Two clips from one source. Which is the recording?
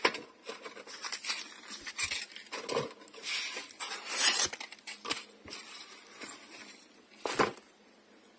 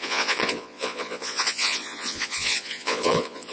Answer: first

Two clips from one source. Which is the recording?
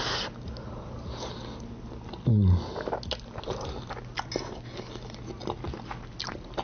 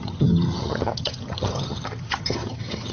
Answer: first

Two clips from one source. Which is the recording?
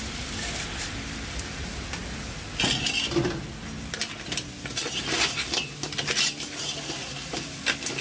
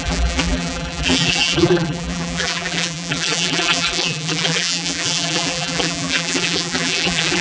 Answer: first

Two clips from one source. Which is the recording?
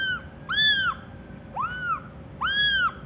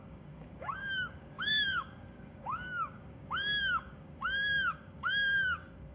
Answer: first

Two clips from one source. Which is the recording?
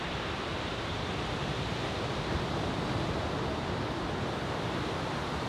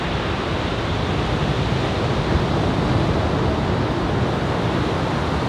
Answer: second